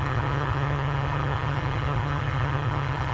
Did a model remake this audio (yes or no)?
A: yes